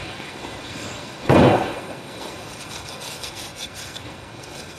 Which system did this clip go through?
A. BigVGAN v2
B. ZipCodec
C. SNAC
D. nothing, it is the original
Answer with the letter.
C